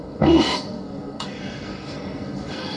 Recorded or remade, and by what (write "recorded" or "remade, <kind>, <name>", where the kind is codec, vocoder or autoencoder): remade, codec, SNAC